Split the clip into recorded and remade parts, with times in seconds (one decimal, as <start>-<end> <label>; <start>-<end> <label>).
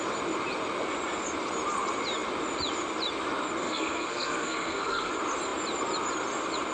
0.0-3.6 recorded; 3.6-5.1 remade; 5.1-6.7 recorded